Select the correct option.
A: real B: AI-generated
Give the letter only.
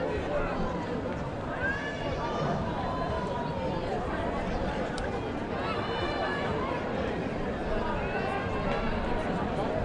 A